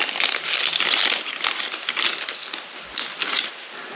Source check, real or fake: real